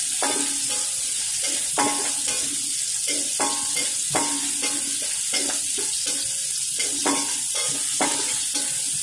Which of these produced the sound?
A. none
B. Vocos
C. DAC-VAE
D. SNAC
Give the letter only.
A